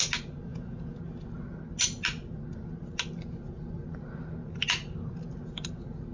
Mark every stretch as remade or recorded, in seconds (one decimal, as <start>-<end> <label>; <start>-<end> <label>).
0.0-0.5 recorded; 0.5-1.0 remade; 1.0-6.1 recorded